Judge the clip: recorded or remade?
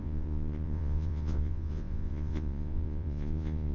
remade